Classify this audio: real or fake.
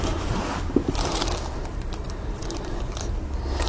fake